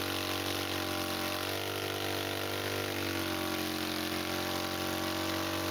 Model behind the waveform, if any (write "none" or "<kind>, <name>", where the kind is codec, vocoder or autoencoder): none